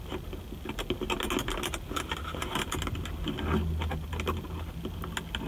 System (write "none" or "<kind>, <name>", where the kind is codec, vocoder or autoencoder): none